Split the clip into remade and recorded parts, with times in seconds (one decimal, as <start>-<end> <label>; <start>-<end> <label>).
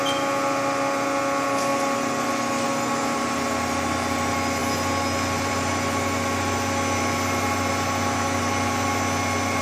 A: 0.0-9.6 recorded